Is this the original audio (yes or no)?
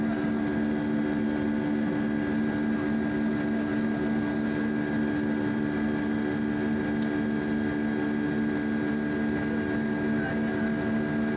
yes